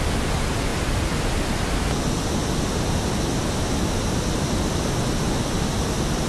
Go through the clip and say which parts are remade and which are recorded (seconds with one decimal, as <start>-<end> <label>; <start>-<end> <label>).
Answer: 0.0-6.3 recorded